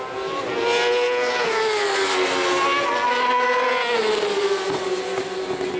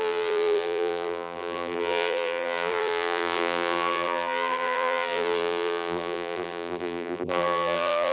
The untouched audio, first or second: first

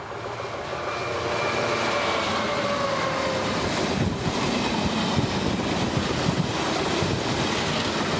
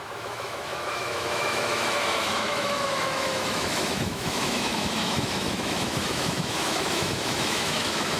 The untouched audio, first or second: first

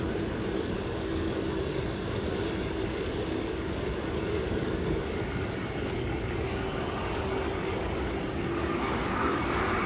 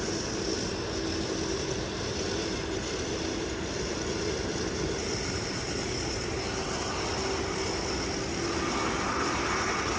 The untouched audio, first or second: second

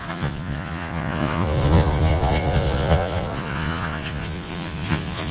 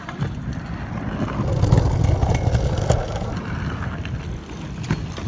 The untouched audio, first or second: second